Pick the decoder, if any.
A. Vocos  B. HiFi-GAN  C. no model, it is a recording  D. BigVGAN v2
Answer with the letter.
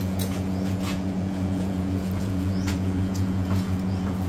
A